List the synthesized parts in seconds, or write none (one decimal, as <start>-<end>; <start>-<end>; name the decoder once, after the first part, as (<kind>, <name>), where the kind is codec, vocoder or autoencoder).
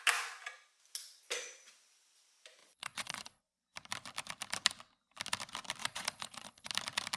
2.6-3.4 (vocoder, Vocos); 5.8-6.7